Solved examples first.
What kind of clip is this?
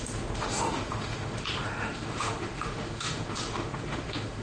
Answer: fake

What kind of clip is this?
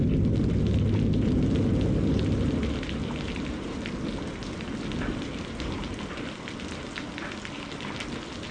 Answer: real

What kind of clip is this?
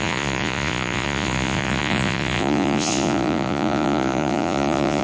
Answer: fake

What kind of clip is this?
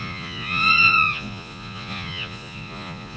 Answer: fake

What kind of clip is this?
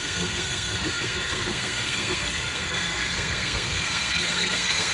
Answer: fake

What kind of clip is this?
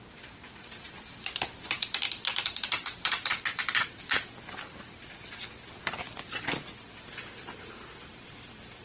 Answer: real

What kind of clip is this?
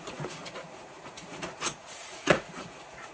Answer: fake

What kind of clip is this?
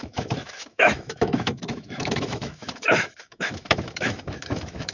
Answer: fake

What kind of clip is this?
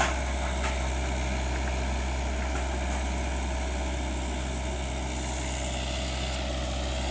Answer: real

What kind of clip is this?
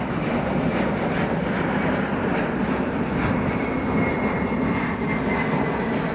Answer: real